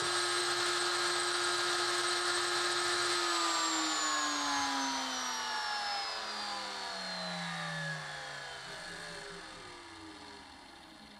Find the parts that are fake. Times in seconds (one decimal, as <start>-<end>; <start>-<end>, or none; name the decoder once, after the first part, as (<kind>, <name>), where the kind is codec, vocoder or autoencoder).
0.4-3.1 (autoencoder, DAC-VAE)